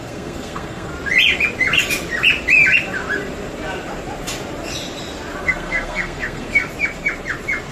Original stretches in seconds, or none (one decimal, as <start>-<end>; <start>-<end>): 0.9-5.4; 6.7-7.7

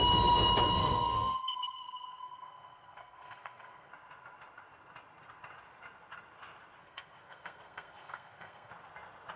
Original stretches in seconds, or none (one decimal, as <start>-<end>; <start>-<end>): 0.0-0.8; 3.9-6.8; 8.7-9.4

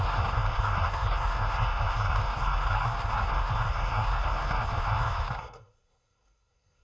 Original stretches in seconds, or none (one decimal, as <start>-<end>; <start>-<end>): none

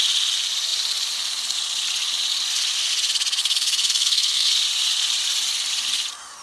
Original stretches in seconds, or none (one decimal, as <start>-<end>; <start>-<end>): 0.0-3.4; 4.5-6.4